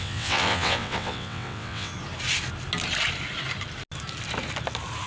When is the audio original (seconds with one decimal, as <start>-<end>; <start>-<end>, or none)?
1.9-5.1